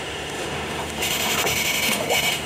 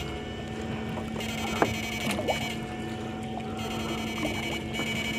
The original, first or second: second